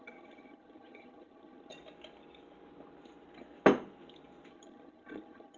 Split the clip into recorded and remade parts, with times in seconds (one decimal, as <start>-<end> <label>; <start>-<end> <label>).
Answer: 0.0-1.7 remade; 1.7-4.5 recorded; 4.5-5.6 remade